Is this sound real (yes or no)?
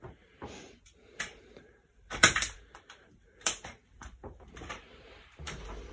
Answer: no